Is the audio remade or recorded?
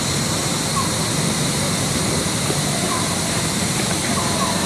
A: recorded